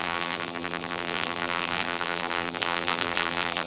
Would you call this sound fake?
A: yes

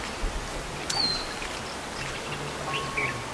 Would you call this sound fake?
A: no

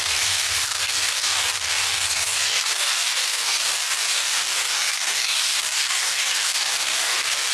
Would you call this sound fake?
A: yes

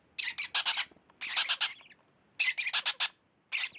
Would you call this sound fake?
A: no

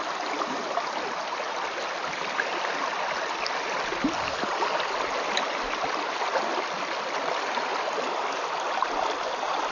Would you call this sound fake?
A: no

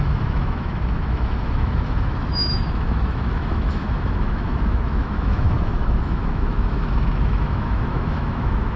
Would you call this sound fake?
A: yes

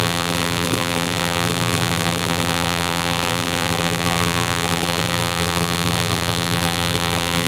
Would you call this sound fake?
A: yes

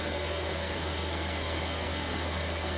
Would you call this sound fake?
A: yes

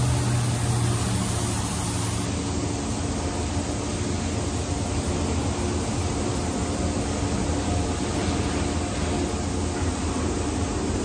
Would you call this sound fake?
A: no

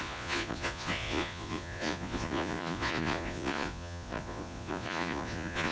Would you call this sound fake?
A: yes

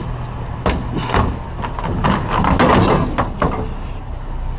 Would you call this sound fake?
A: no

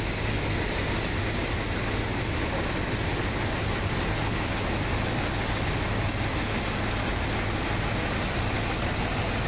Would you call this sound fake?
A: no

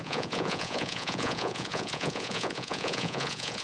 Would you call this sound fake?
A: yes